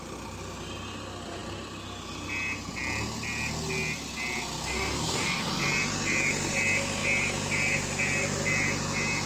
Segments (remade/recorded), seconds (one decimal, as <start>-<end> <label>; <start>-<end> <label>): 0.0-4.6 recorded; 4.6-5.5 remade; 5.5-9.3 recorded